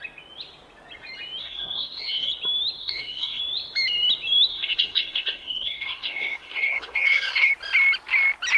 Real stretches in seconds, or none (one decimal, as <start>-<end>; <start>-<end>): 0.0-1.4; 2.3-2.8; 3.4-4.5; 7.5-8.6